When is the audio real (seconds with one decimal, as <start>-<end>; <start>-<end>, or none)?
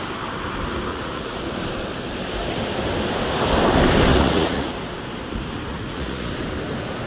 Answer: 0.0-0.9; 1.4-4.1; 4.7-5.7; 6.3-7.1